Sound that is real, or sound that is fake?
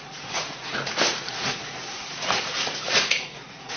fake